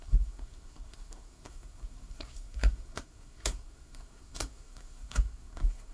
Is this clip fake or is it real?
fake